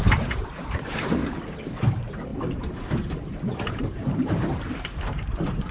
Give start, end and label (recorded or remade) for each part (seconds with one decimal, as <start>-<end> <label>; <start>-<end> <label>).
0.0-0.9 remade; 0.9-1.9 recorded; 1.9-5.7 remade